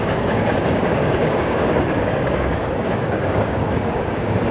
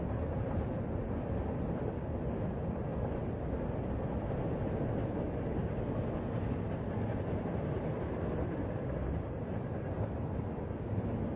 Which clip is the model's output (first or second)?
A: first